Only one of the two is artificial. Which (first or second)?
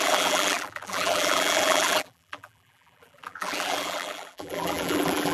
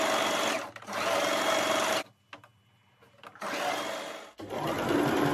first